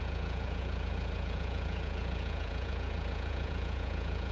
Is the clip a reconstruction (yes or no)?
yes